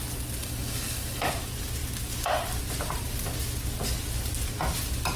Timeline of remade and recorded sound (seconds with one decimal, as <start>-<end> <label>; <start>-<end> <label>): 0.0-0.4 recorded; 0.4-1.3 remade; 1.3-5.2 recorded